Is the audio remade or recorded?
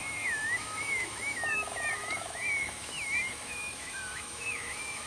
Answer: remade